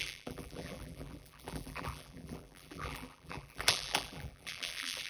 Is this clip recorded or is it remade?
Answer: remade